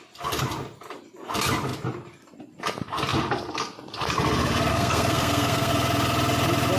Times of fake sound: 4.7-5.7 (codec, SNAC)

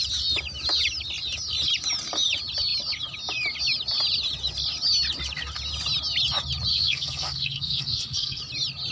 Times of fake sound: 6.7-8.4 (codec, SNAC)